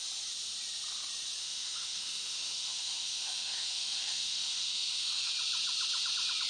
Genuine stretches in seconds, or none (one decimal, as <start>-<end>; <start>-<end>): 0.0-1.4; 5.3-6.5